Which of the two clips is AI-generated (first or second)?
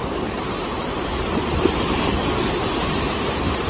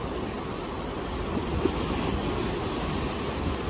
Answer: first